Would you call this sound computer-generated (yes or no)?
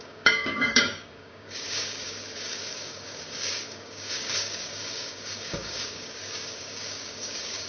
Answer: yes